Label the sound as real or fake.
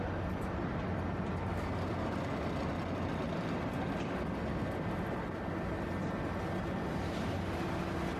real